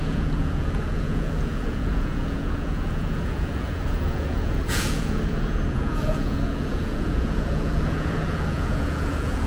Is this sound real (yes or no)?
no